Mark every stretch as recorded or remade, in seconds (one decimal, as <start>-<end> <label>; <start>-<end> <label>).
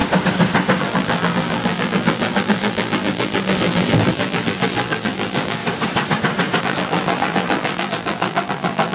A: 0.0-0.8 recorded; 0.8-5.6 remade; 5.6-6.6 recorded; 6.6-8.9 remade